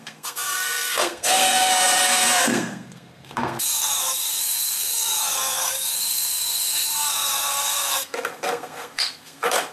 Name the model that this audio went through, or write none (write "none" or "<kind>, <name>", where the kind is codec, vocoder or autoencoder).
codec, SNAC